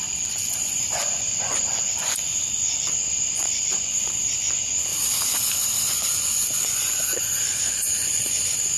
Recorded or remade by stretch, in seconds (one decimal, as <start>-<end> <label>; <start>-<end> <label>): 0.0-4.9 remade; 4.9-5.9 recorded; 5.9-8.8 remade